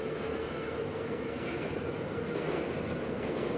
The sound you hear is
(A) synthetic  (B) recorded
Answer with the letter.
A